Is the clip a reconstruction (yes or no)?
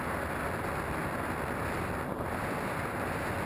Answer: no